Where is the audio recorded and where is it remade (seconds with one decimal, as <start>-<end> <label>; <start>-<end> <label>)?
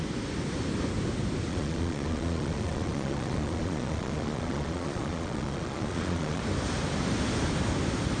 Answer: 0.0-1.5 recorded; 1.5-6.4 remade; 6.4-8.2 recorded